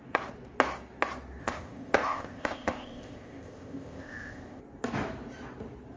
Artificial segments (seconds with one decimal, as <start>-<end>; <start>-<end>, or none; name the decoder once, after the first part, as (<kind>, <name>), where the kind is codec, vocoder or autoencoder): 1.4-4.6 (codec, ZipCodec)